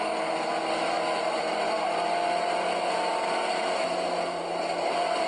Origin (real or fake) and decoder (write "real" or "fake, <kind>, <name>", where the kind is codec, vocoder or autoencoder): real